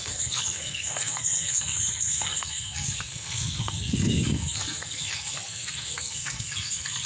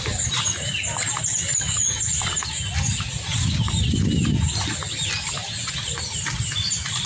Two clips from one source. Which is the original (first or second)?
second